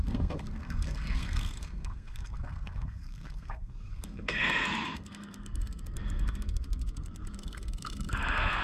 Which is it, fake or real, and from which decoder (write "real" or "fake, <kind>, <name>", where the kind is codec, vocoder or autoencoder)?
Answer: fake, codec, SNAC